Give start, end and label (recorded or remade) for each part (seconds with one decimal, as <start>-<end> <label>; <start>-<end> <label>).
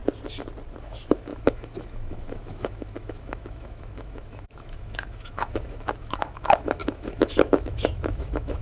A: 0.0-0.8 recorded; 0.8-8.6 remade